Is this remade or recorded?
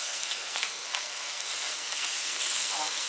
remade